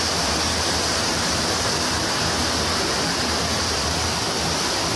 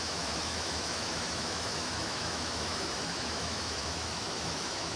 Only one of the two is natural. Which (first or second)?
first